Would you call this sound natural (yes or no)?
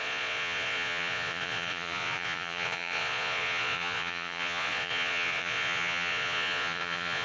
no